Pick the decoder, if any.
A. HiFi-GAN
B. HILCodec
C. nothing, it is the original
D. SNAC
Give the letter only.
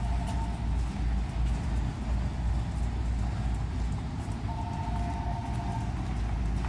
C